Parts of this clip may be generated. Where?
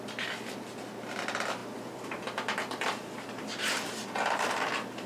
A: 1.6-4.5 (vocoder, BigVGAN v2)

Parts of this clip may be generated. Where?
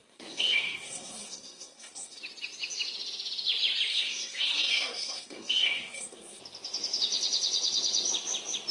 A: 0.0-2.2 (codec, SNAC); 3.9-6.4